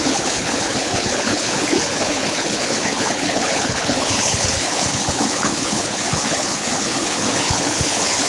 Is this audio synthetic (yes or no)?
yes